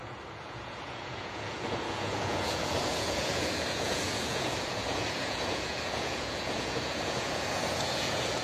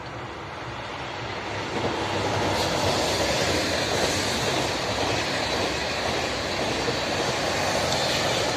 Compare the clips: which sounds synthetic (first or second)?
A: first